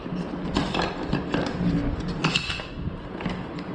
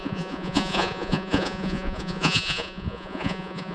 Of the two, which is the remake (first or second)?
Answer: second